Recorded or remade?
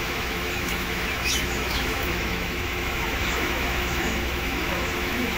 remade